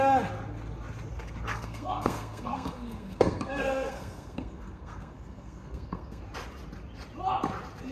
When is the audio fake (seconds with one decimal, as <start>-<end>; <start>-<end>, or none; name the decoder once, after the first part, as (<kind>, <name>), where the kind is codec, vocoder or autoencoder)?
1.5-6.2 (codec, SNAC)